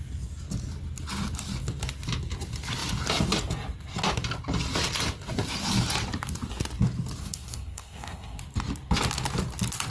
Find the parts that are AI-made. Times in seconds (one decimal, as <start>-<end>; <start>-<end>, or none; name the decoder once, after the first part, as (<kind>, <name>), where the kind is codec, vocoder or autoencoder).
7.2-8.4 (codec, SNAC)